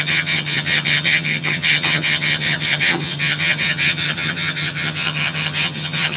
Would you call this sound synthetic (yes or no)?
yes